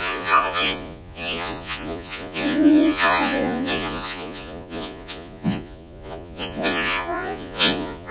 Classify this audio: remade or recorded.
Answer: remade